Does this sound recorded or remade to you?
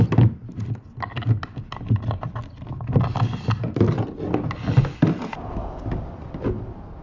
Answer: recorded